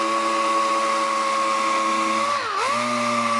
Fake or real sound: real